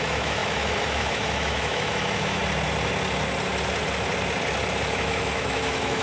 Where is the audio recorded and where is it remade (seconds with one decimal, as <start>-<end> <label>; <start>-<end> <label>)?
0.0-2.4 remade; 2.4-4.9 recorded; 4.9-6.0 remade